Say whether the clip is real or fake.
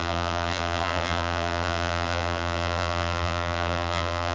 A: fake